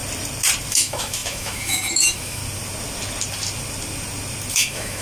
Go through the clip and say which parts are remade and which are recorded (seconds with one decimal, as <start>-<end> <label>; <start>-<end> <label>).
0.0-0.7 recorded; 0.7-2.4 remade; 2.4-4.5 recorded; 4.5-5.0 remade